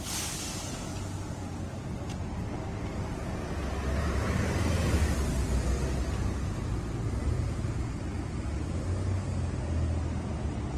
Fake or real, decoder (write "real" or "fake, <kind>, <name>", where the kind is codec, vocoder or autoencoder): real